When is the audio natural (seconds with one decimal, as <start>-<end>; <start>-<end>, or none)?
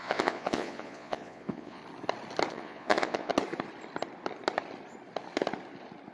1.8-2.5; 3.3-6.1